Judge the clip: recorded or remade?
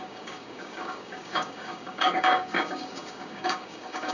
remade